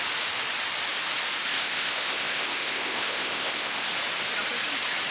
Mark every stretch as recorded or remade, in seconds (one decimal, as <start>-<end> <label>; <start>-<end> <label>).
0.0-1.5 recorded; 1.5-3.9 remade; 3.9-5.1 recorded